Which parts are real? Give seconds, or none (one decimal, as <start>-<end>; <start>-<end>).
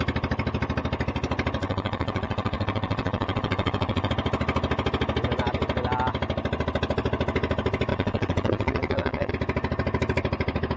0.0-1.6; 4.1-7.9; 9.3-10.8